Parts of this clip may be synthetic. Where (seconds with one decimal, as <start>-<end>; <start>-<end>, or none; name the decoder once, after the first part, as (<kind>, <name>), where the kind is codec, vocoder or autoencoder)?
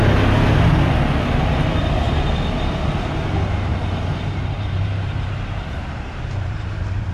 3.7-7.1 (vocoder, BigVGAN v2)